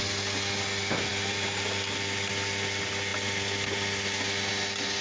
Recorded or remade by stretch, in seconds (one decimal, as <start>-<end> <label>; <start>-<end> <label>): 0.0-5.0 recorded